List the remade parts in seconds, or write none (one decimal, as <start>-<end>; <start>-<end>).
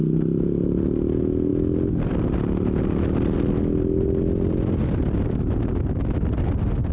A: none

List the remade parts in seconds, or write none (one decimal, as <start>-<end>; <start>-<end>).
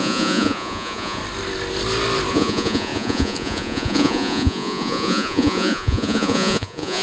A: 0.0-1.2; 2.3-7.0